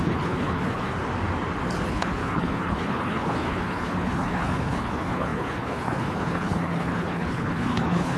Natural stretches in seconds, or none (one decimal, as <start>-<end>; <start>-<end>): 0.9-1.9